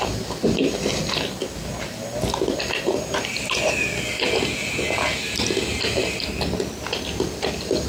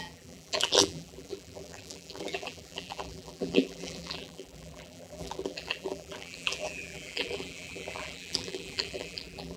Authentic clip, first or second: first